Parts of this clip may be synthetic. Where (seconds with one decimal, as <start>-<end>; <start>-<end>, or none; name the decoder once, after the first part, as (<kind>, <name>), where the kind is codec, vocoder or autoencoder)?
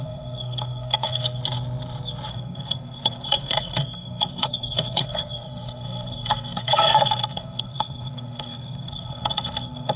0.0-1.4 (codec, SNAC); 2.3-10.0